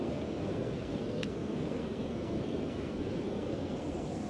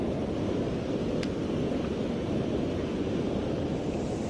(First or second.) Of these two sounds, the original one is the second